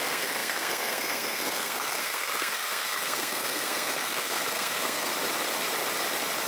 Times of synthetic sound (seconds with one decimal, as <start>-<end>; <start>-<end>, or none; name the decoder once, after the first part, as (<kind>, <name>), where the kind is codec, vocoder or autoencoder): 0.0-5.1 (codec, SNAC)